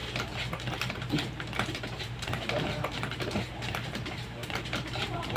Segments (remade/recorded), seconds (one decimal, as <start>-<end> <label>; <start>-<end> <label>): 0.0-0.9 recorded; 0.9-5.4 remade